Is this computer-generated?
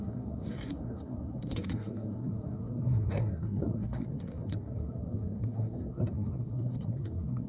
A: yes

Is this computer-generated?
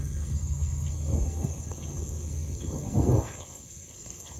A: yes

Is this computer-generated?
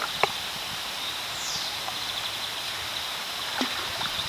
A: yes